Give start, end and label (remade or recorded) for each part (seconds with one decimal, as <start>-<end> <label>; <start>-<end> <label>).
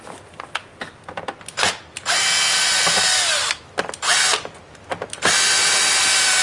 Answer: 0.0-6.4 recorded